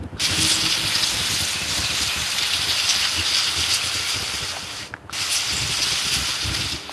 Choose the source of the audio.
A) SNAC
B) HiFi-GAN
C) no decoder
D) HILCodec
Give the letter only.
C